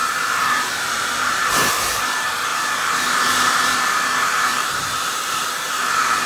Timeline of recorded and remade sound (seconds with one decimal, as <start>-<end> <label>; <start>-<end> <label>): 0.0-1.4 remade; 1.4-4.5 recorded; 4.5-5.3 remade; 5.3-6.3 recorded